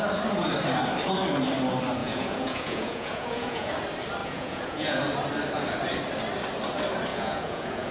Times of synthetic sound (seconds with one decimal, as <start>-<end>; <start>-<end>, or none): 2.0-3.7; 4.2-5.0; 7.1-7.9